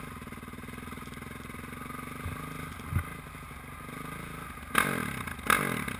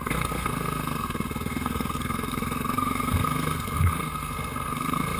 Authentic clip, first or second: first